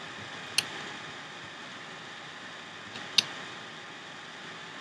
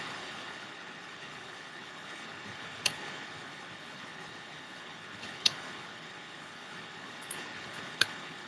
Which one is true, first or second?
first